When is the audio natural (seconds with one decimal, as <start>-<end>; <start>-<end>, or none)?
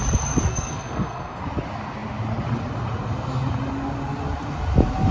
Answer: 0.0-0.5; 1.4-5.1